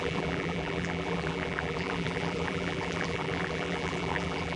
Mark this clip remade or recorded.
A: remade